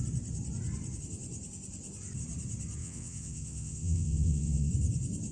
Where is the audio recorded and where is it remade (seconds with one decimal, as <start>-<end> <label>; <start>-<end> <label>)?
0.0-2.8 recorded; 2.8-4.7 remade; 4.7-5.3 recorded